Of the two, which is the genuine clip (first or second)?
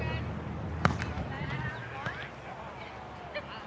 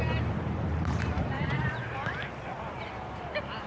first